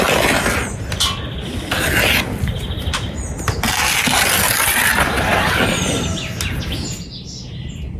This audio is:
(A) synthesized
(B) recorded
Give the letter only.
B